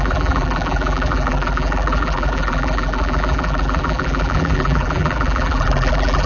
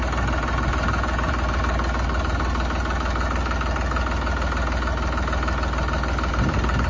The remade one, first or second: first